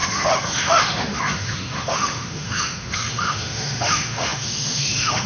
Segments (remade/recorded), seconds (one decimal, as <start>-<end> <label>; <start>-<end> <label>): 0.0-5.3 remade